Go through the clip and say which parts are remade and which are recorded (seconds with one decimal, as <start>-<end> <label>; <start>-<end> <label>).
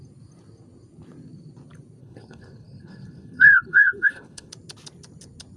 0.0-2.0 recorded; 2.0-4.5 remade; 4.5-5.6 recorded